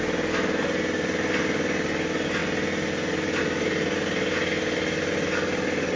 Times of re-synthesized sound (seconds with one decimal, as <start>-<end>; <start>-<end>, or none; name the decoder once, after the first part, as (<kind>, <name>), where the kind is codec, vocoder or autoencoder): none